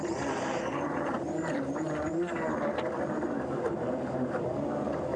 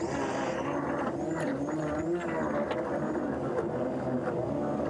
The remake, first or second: first